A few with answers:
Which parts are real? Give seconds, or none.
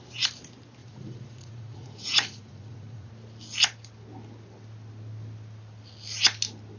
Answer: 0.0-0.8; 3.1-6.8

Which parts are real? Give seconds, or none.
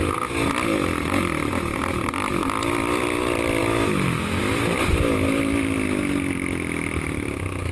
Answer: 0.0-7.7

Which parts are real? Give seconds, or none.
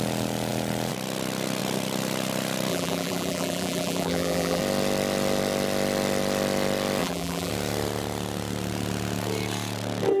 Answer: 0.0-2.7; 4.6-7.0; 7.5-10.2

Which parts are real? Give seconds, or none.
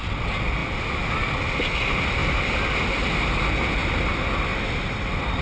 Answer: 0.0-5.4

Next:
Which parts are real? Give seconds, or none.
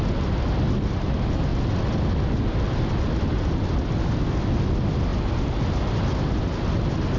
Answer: 0.0-7.2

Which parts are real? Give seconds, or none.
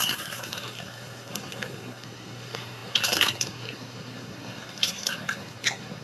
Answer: none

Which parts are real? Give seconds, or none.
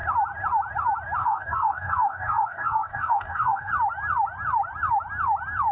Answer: 0.0-1.2; 3.7-5.7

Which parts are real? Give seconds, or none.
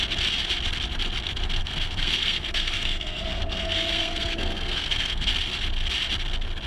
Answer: 0.0-1.6; 5.3-6.7